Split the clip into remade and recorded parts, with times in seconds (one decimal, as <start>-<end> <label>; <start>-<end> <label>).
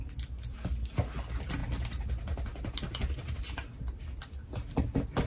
0.0-5.3 recorded